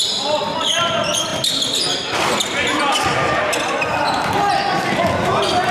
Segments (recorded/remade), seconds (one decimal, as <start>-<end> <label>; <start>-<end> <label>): 0.0-5.7 recorded